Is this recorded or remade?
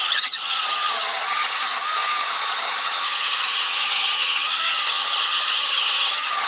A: remade